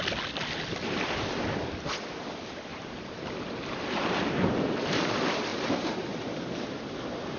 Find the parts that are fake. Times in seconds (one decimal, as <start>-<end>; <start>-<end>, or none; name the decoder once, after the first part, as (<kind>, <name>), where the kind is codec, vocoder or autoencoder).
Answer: 2.7-5.1 (vocoder, BigVGAN v2); 5.5-7.4